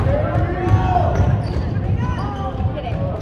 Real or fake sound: real